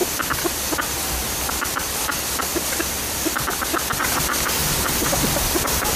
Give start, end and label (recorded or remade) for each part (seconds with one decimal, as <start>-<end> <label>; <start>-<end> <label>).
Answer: 0.0-1.2 recorded; 1.2-6.0 remade